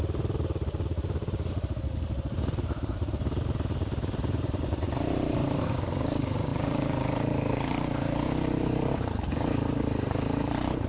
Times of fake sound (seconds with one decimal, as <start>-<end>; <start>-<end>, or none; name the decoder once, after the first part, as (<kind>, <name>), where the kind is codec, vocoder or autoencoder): 0.0-10.9 (vocoder, BigVGAN v2)